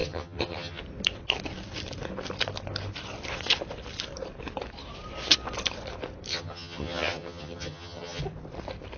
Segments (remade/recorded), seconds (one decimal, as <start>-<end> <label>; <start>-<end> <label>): 0.0-0.8 remade; 0.8-6.3 recorded; 6.3-8.2 remade; 8.2-9.0 recorded